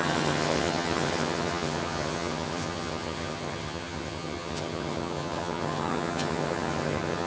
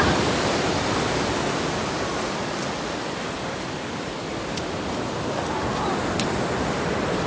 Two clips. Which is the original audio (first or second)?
second